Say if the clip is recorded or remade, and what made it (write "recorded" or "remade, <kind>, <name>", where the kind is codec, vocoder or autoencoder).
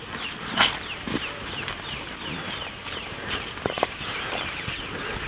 recorded